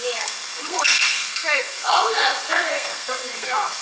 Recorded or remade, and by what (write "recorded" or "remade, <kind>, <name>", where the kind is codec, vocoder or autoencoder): remade, codec, SNAC